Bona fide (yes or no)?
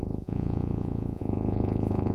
no